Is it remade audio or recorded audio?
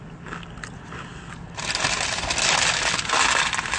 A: recorded